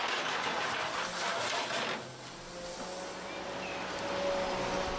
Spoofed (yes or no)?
no